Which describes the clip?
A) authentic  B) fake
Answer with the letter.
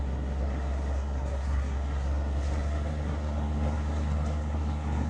B